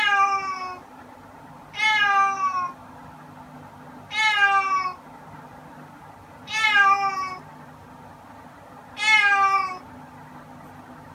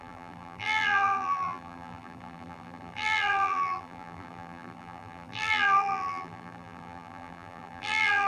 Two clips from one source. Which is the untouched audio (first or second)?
first